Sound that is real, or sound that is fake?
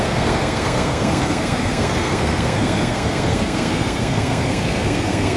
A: fake